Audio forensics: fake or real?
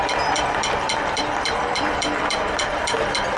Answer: fake